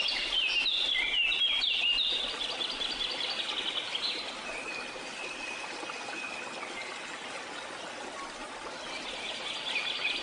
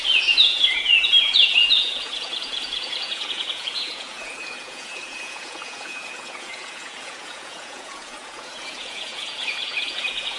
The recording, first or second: first